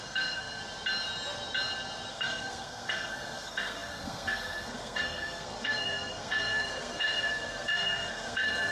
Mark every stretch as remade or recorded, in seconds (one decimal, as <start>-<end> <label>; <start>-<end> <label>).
0.0-0.6 remade; 0.6-2.1 recorded; 2.1-8.7 remade